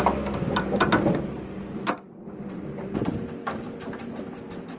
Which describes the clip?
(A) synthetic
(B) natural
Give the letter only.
B